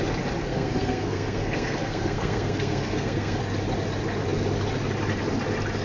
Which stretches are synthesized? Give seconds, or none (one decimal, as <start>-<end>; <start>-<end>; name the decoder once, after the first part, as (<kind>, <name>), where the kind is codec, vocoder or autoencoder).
0.4-3.4 (codec, SNAC)